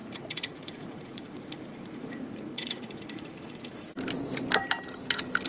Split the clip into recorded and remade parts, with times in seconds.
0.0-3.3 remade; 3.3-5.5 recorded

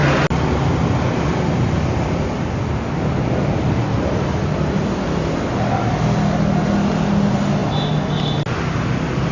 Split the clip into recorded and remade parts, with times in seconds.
0.0-9.3 recorded

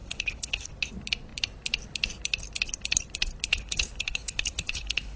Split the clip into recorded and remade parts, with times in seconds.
0.0-0.7 remade; 0.7-3.5 recorded; 3.5-5.2 remade

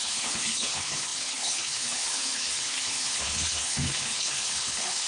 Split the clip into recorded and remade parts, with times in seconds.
0.0-5.1 remade